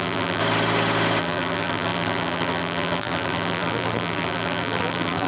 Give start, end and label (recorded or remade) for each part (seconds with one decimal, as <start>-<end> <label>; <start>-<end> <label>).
0.0-0.4 remade; 0.4-1.2 recorded; 1.2-5.3 remade